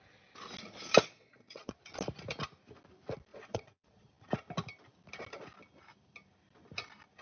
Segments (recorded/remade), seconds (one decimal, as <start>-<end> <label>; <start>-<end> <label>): 0.0-1.0 recorded; 1.0-1.8 remade; 1.8-3.3 recorded; 3.3-4.1 remade; 4.1-7.2 recorded